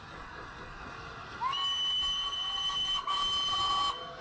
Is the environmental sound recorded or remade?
recorded